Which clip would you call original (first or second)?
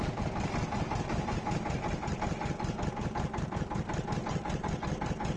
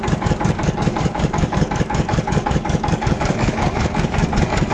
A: first